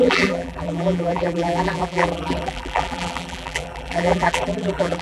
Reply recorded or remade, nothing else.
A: remade